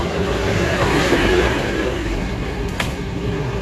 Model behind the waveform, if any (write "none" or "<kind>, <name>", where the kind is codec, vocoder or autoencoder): codec, SNAC